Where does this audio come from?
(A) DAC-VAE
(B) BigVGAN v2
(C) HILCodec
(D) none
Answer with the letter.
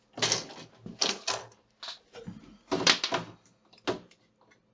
D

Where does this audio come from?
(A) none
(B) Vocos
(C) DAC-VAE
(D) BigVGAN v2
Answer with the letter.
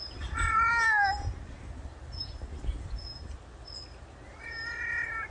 A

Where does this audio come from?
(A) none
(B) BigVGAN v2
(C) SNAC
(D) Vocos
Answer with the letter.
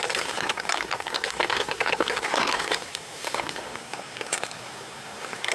C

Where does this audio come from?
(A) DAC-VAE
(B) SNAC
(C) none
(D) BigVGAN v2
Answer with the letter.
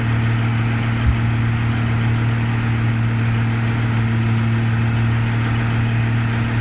C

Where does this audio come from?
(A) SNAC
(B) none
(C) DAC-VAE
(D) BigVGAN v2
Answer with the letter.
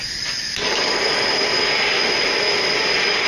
B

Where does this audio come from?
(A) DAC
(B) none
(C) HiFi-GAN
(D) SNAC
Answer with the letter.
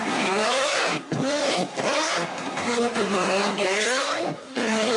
D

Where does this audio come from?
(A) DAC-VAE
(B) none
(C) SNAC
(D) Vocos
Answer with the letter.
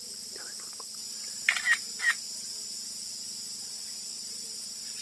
B